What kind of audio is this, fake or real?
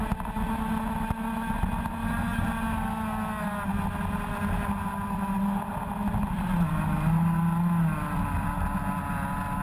real